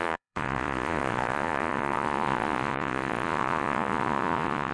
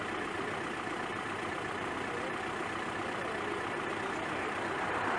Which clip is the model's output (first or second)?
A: first